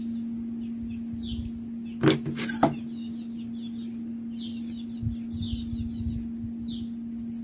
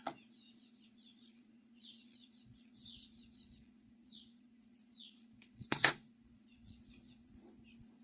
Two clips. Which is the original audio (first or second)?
first